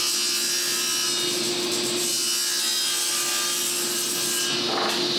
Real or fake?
real